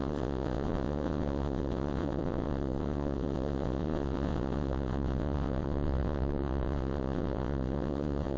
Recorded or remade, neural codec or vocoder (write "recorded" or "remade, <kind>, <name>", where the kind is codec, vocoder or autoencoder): remade, vocoder, WaveNeXt